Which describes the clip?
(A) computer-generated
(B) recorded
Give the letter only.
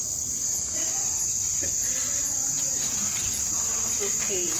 B